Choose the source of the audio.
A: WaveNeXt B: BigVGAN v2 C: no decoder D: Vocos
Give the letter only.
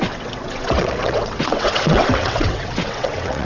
A